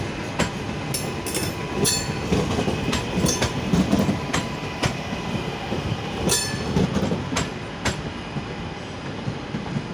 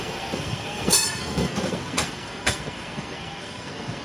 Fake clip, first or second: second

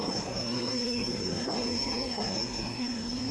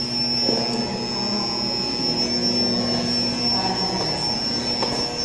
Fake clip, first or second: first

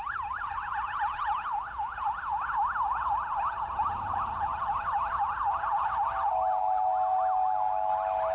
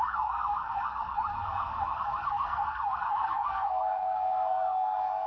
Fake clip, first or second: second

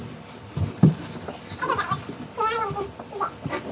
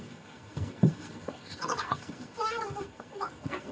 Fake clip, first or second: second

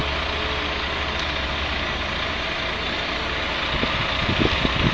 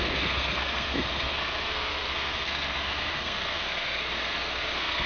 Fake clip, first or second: second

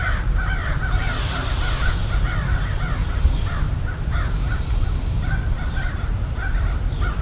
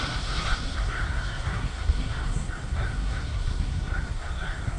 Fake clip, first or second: second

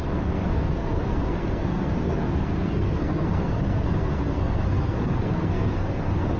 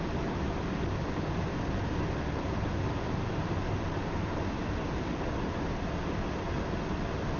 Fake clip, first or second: first